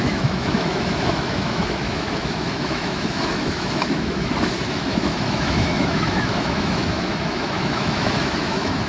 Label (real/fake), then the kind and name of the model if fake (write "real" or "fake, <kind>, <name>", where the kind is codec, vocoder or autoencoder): fake, autoencoder, DAC-VAE